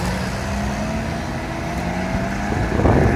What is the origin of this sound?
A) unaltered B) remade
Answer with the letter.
A